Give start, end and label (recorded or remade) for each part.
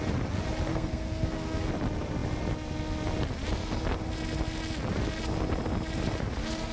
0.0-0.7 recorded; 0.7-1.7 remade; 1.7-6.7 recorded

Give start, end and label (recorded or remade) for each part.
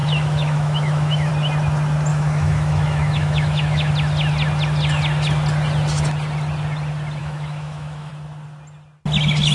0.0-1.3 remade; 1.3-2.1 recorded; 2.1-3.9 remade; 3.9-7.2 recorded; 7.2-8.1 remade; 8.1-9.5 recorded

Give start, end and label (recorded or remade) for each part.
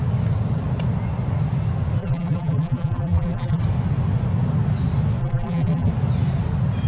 0.0-2.0 recorded; 2.0-3.6 remade; 3.6-5.2 recorded; 5.2-5.9 remade; 5.9-6.9 recorded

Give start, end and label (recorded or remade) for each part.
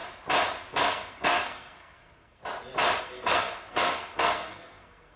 0.0-0.7 recorded; 0.7-2.4 remade; 2.4-3.0 recorded; 3.0-5.2 remade